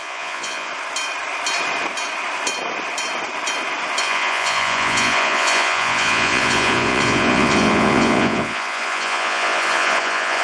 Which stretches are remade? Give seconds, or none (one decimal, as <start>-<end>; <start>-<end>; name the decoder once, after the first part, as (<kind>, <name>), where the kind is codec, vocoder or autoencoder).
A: 0.0-0.7 (vocoder, Vocos); 4.0-10.4